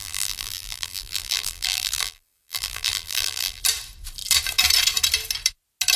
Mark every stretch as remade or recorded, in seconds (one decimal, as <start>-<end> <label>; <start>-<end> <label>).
0.0-3.6 remade; 3.6-6.0 recorded